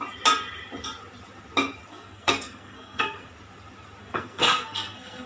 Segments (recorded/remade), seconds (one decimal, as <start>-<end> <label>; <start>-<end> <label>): 0.0-1.9 recorded; 1.9-3.3 remade; 3.3-4.0 recorded; 4.0-5.3 remade